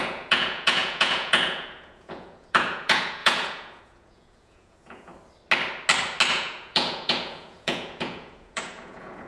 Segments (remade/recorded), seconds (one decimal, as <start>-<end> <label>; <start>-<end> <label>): 0.0-5.1 remade; 5.1-6.3 recorded; 6.3-9.3 remade